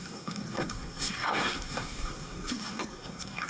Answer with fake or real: fake